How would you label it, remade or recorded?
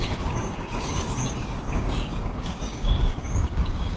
remade